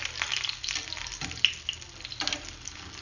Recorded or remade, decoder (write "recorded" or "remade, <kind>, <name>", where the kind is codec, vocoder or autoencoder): recorded